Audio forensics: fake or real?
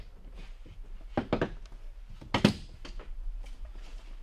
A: real